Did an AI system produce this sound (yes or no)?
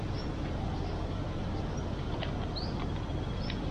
no